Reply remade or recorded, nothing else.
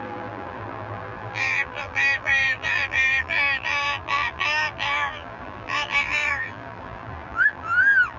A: remade